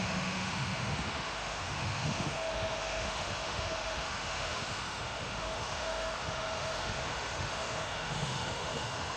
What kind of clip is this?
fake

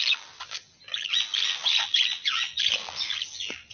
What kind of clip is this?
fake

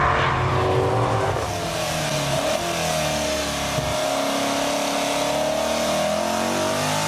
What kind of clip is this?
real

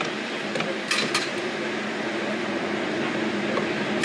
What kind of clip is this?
real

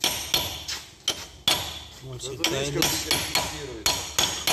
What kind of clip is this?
real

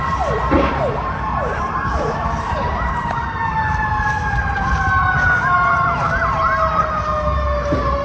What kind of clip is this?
fake